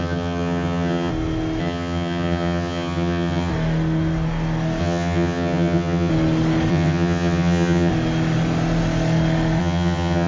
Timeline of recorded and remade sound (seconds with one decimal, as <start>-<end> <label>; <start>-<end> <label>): 0.0-1.1 remade; 1.1-1.6 recorded; 1.6-3.5 remade; 3.5-4.8 recorded; 4.8-6.1 remade; 6.1-6.7 recorded; 6.7-7.9 remade; 7.9-9.6 recorded; 9.6-10.3 remade